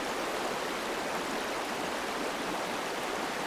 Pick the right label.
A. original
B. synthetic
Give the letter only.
A